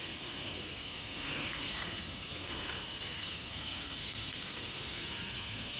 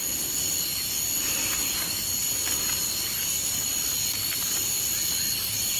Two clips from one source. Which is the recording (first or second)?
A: second